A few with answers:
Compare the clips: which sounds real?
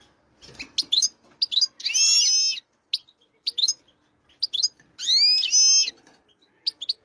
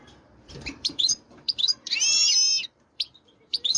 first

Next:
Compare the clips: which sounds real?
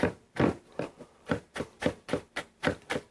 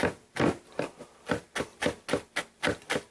second